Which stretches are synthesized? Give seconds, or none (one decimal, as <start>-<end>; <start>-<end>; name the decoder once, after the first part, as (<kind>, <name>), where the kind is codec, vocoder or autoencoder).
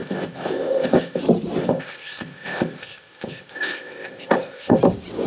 0.0-1.2 (codec, ZipCodec); 1.6-4.8